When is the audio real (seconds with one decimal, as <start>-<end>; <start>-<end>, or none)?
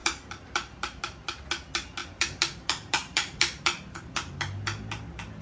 1.0-2.0; 4.1-5.4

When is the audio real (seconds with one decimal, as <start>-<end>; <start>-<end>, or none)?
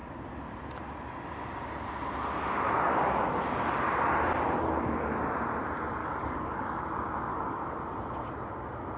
0.0-6.0; 6.8-7.3; 7.8-9.0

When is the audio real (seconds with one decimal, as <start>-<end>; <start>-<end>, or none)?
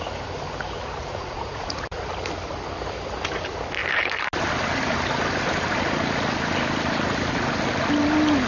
0.0-1.0; 2.0-8.5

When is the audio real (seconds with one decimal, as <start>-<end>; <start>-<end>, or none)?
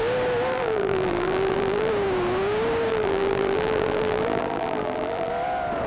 0.0-0.5; 1.9-2.9; 5.3-5.9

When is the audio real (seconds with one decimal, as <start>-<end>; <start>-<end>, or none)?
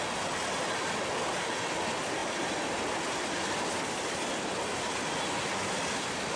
0.0-6.4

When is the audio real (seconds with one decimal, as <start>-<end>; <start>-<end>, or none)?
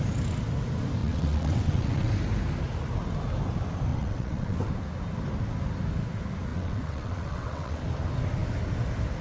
0.0-1.0; 2.1-3.9; 4.7-6.5; 7.8-9.2